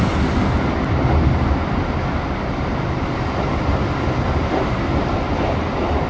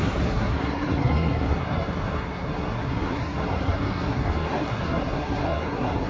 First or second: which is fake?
second